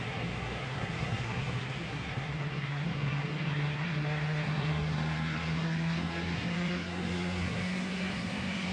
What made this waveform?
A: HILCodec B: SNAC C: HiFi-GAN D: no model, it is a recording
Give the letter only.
B